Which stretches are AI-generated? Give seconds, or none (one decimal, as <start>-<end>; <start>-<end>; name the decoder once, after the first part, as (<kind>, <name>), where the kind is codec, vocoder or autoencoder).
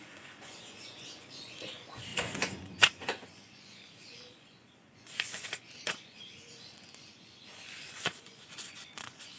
0.0-9.4 (vocoder, Vocos)